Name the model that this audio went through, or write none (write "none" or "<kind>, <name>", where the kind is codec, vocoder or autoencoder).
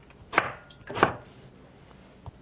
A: none